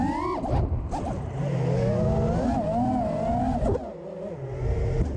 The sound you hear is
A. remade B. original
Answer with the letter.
B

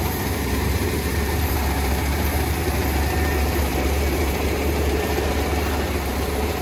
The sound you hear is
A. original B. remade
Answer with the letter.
B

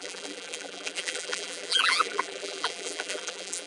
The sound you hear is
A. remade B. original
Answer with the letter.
A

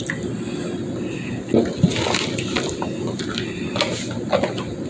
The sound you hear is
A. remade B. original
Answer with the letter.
B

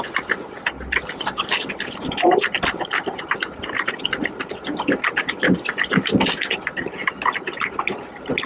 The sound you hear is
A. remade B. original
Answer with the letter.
B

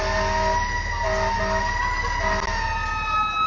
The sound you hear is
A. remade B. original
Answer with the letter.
B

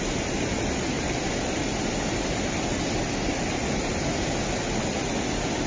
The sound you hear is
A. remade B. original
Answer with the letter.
B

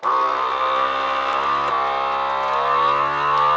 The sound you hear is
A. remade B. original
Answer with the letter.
B